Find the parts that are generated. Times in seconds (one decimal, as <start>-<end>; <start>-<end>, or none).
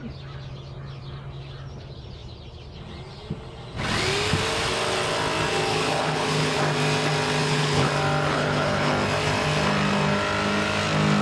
5.7-6.6; 7.4-7.9; 8.3-8.9